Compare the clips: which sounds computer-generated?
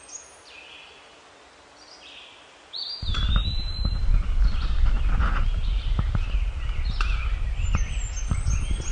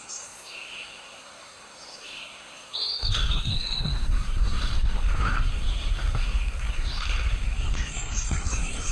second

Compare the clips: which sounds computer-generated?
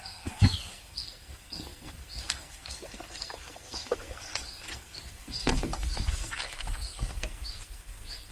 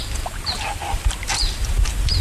first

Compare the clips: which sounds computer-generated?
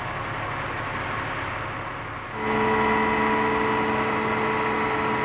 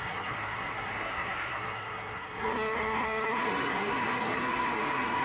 second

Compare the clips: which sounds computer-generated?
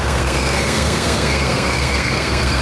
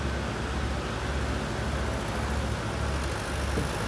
first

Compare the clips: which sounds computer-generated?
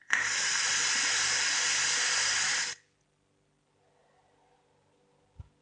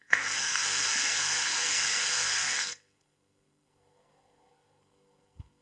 second